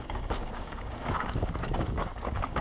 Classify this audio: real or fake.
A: fake